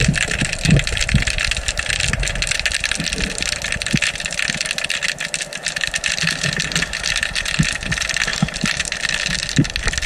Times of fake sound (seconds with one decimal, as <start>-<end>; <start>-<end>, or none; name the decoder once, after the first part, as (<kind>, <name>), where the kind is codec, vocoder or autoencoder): 8.3-8.8 (vocoder, BigVGAN v2)